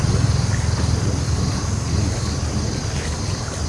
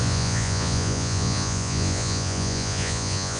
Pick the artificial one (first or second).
second